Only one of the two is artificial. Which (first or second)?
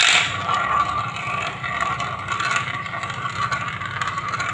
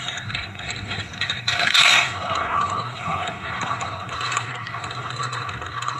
second